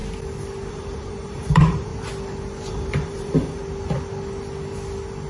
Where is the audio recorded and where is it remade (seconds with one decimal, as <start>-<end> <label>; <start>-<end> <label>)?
0.0-0.7 recorded; 0.7-1.9 remade; 1.9-2.7 recorded; 2.7-3.6 remade; 3.6-5.3 recorded